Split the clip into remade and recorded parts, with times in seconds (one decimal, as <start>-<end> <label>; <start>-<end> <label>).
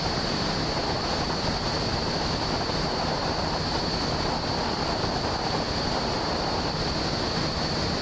0.0-8.0 recorded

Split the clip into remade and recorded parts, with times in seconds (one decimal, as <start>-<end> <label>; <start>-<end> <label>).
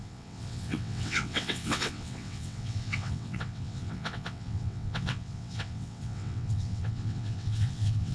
0.0-8.1 remade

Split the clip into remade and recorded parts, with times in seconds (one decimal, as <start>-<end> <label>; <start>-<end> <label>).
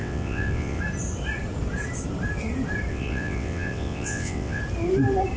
0.0-0.8 remade; 0.8-2.9 recorded; 2.9-4.6 remade; 4.6-5.4 recorded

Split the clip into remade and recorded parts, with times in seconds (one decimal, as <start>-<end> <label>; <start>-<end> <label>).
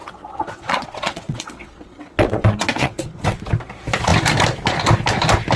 0.0-3.4 remade; 3.4-5.6 recorded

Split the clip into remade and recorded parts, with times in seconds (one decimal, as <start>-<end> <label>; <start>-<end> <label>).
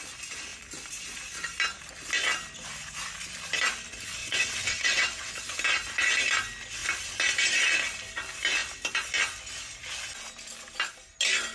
0.0-4.2 recorded; 4.2-5.3 remade; 5.3-11.5 recorded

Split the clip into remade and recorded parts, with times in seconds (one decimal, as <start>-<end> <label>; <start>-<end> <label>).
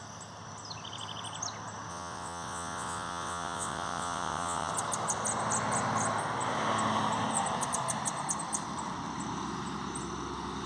0.0-1.9 recorded; 1.9-4.7 remade; 4.7-10.7 recorded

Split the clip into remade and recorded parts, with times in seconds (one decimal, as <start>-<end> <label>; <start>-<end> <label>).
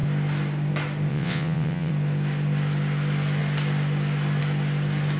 0.0-1.1 recorded; 1.1-1.9 remade; 1.9-5.2 recorded